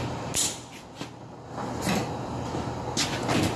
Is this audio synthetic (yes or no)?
no